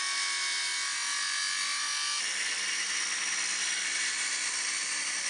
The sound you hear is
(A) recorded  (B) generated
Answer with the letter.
A